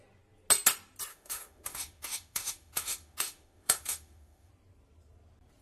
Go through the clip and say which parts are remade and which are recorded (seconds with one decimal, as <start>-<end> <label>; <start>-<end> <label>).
0.0-1.1 recorded; 1.1-4.5 remade; 4.5-5.6 recorded